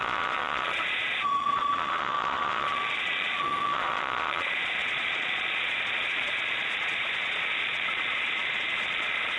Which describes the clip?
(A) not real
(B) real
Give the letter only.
A